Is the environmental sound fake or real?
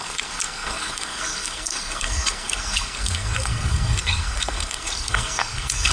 fake